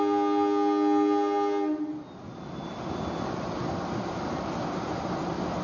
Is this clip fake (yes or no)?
no